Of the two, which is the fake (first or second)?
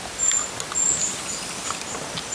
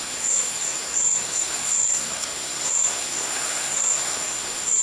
second